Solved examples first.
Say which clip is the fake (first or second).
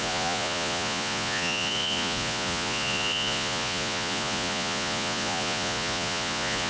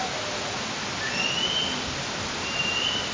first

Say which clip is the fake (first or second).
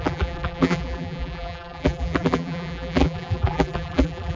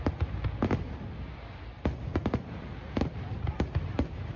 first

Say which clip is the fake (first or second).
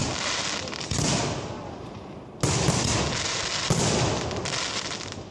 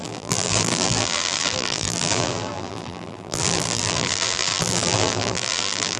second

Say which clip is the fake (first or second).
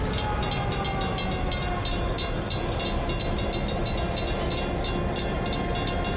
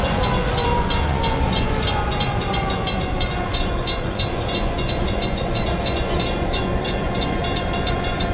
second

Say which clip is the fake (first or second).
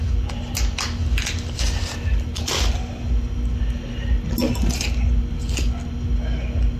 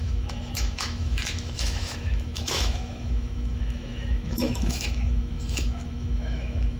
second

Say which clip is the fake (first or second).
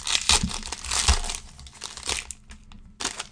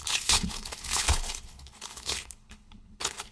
second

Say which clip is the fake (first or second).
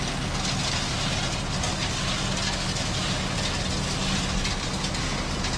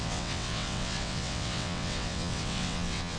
second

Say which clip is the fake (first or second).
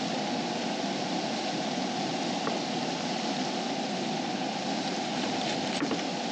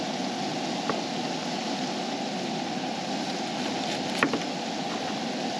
first